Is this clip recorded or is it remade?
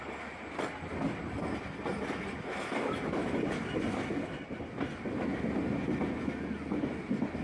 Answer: recorded